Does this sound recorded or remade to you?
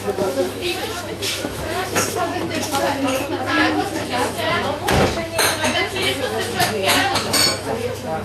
remade